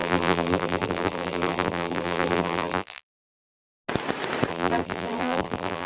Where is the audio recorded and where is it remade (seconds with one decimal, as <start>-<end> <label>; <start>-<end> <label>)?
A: 0.0-3.4 remade; 3.4-4.5 recorded; 4.5-5.9 remade